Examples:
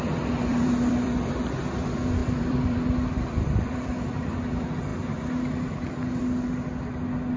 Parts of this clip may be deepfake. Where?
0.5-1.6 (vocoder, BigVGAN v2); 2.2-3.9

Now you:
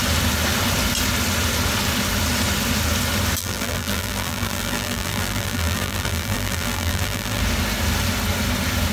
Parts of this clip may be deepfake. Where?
3.4-7.4 (vocoder, BigVGAN v2)

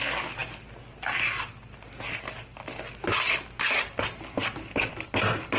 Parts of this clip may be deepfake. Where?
none

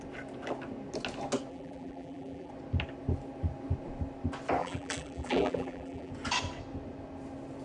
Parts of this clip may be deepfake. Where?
1.5-2.5 (vocoder, BigVGAN v2); 4.6-6.1

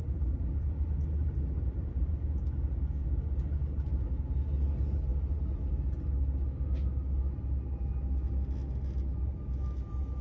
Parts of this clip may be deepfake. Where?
1.2-2.2 (vocoder, BigVGAN v2); 5.1-5.9

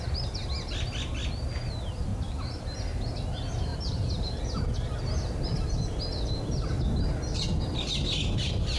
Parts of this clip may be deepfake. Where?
2.1-2.6 (vocoder, BigVGAN v2); 3.7-4.4